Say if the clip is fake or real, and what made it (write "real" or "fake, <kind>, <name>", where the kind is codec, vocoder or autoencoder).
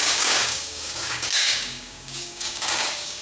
fake, codec, DAC